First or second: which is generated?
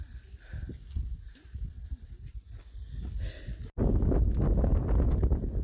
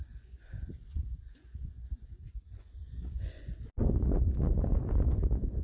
second